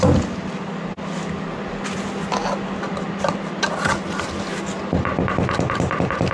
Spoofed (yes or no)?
no